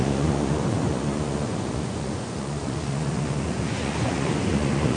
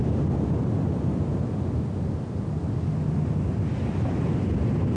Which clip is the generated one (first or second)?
first